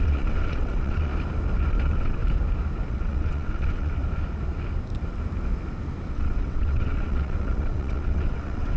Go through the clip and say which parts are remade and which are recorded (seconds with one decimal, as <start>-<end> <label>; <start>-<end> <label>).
0.0-1.1 remade; 1.1-1.7 recorded; 1.7-2.2 remade; 2.2-2.9 recorded; 2.9-4.0 remade; 4.0-6.1 recorded; 6.1-8.8 remade